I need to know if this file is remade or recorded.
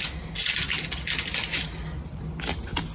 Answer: recorded